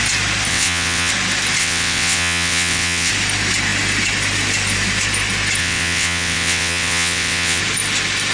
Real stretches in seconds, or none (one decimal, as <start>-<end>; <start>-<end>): 0.0-0.5; 1.1-1.6; 3.1-5.6; 7.6-8.3